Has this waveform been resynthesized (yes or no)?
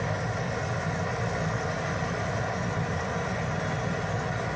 no